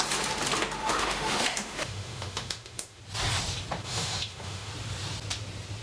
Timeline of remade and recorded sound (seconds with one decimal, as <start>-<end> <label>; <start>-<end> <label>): 0.0-0.8 recorded; 0.8-3.0 remade; 3.0-3.8 recorded; 3.8-4.7 remade; 4.7-5.8 recorded